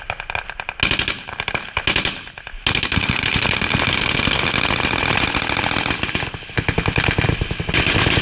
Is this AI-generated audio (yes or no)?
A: no